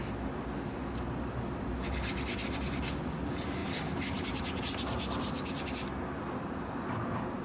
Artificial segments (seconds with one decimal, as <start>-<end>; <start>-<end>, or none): none